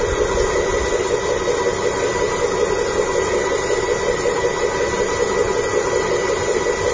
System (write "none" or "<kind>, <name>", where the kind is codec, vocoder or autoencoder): none